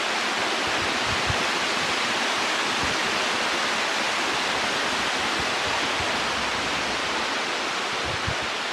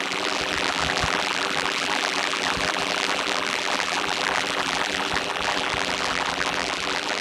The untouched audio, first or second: first